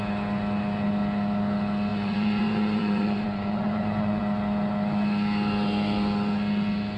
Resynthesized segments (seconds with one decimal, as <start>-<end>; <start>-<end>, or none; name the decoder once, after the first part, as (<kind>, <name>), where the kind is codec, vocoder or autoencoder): 1.9-4.2 (vocoder, Vocos)